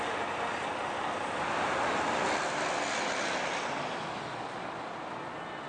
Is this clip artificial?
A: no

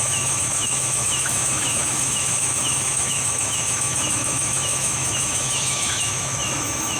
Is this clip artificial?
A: yes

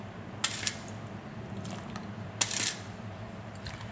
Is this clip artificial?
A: no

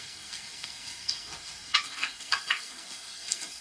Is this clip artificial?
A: yes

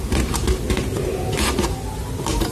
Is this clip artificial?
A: no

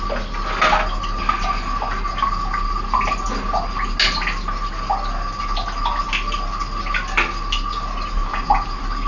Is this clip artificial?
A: no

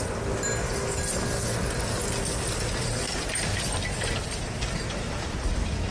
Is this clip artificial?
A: no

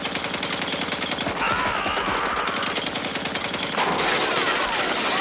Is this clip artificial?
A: no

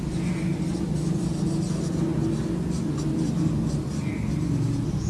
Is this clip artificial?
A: no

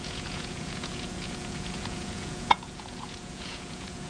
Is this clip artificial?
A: yes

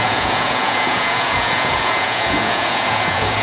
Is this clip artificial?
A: yes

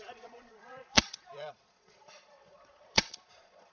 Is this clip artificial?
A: yes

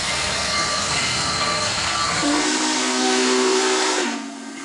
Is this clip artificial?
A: yes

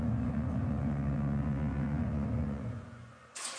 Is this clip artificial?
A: yes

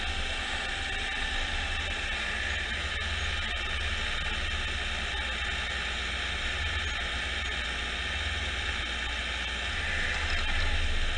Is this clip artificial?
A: no